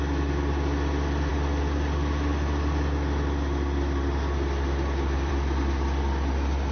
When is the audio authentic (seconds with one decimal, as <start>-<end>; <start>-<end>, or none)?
0.0-6.7